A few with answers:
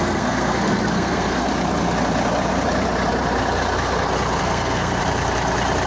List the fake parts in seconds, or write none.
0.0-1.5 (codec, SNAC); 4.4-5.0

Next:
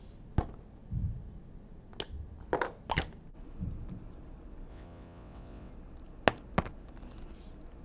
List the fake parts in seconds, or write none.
4.7-5.7 (vocoder, WaveNeXt)

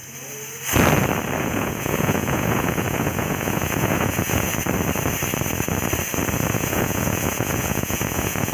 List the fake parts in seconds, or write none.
1.4-4.5 (vocoder, Vocos); 6.5-8.5

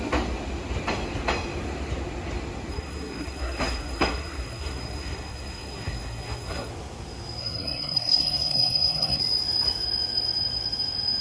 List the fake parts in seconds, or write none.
2.7-6.7 (codec, SNAC); 7.4-9.2

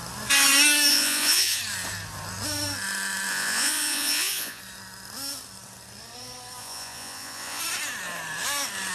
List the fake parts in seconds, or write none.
0.9-1.6 (vocoder, Vocos); 3.3-4.6; 6.6-7.6

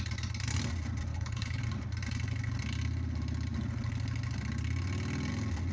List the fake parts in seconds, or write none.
1.1-1.6 (codec, HILCodec)